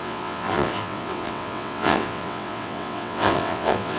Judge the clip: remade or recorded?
remade